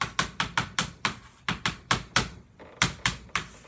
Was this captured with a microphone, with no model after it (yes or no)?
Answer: yes